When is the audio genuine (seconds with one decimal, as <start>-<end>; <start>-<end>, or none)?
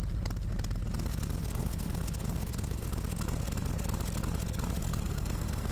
0.0-1.4; 2.9-4.8